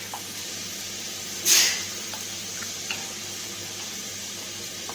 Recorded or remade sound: recorded